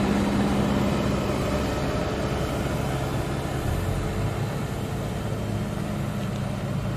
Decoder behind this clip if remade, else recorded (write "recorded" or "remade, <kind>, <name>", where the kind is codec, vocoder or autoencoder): recorded